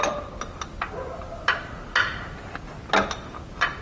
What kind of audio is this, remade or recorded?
recorded